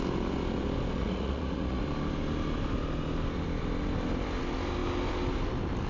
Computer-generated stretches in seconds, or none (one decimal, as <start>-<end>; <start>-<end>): 1.0-1.8